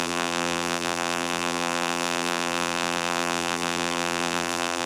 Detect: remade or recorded remade